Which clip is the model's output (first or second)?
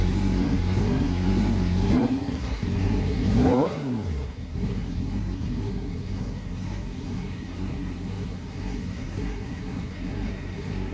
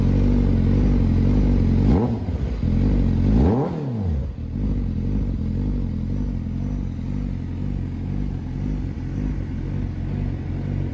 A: first